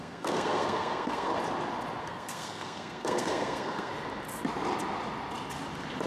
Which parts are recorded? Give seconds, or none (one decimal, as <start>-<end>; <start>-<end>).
1.3-2.0; 3.9-6.1